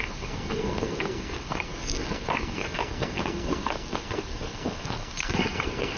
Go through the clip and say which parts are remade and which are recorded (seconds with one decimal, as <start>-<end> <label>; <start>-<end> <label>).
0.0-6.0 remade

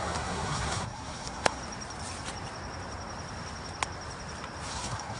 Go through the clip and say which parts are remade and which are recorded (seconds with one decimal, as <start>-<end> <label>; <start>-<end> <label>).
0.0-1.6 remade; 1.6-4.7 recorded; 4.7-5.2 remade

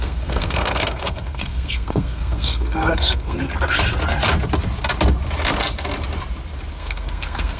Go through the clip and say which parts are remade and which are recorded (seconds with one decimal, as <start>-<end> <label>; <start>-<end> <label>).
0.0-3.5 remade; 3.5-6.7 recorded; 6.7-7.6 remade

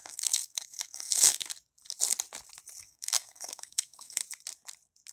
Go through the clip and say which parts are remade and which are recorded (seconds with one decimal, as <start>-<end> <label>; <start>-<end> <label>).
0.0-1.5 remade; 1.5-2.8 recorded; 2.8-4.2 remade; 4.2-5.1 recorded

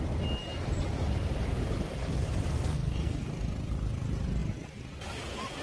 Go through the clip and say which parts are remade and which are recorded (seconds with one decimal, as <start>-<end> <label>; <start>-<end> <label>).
0.0-2.5 recorded; 2.5-3.3 remade; 3.3-5.6 recorded

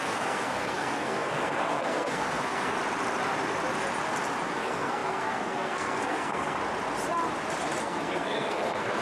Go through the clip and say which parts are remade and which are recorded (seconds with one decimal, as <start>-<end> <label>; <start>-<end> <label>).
0.0-2.8 remade; 2.8-4.5 recorded; 4.5-6.6 remade; 6.6-7.8 recorded; 7.8-9.0 remade

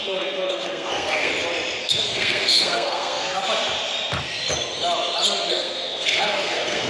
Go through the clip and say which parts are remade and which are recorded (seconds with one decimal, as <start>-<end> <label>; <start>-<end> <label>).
0.0-1.3 remade; 1.3-1.8 recorded; 1.8-3.4 remade; 3.4-5.5 recorded; 5.5-6.9 remade